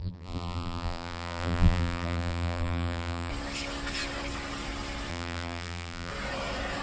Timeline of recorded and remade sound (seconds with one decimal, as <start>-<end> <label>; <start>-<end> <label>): 0.0-3.3 remade; 3.3-5.1 recorded; 5.1-6.1 remade; 6.1-6.8 recorded